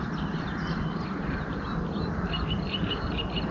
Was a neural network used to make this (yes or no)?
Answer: yes